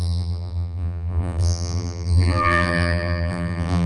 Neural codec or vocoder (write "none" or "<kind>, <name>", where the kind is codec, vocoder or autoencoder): vocoder, BigVGAN v2